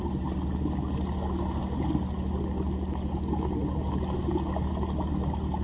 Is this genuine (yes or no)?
yes